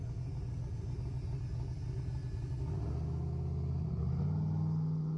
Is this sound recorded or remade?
recorded